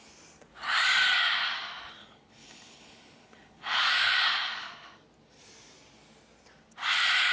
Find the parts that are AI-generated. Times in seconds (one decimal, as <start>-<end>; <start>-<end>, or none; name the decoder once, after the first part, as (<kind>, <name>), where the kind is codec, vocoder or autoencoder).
2.0-3.8 (codec, HILCodec)

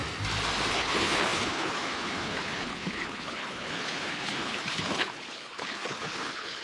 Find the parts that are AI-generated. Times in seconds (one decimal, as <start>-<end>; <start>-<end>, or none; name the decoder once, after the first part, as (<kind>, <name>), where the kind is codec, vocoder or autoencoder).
0.7-6.6 (codec, HILCodec)

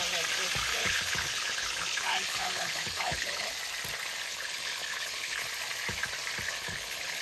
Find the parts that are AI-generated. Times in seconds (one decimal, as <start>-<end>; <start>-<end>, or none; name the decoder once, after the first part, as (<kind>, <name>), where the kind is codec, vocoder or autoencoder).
0.7-3.5 (codec, HILCodec); 4.3-5.4; 6.5-7.2

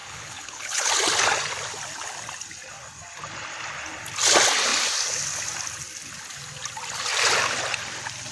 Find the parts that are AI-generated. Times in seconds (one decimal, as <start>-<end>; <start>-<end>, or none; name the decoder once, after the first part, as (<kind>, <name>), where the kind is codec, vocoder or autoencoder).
0.0-0.9 (codec, HILCodec)

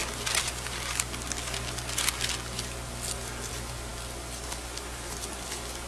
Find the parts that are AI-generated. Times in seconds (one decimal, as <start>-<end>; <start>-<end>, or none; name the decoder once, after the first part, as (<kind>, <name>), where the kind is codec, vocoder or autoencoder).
none